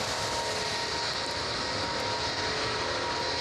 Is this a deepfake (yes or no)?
no